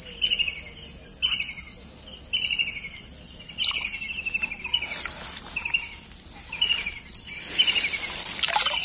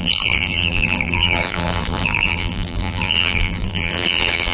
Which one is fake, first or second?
second